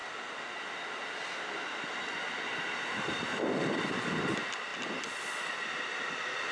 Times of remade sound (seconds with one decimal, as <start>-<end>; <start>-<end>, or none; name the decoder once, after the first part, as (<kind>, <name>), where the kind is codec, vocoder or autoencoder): none